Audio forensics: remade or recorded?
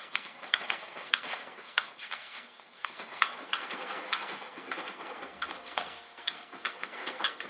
remade